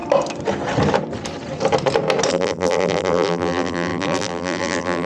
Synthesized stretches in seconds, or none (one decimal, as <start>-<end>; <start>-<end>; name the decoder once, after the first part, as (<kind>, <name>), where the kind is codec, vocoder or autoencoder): 2.3-5.1 (vocoder, BigVGAN v2)